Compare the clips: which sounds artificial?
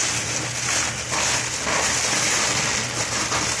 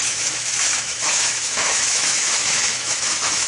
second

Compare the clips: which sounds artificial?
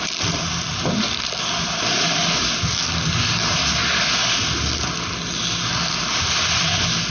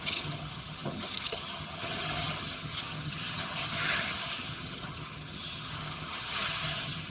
second